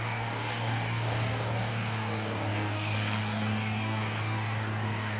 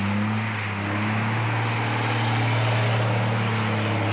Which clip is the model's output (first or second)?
first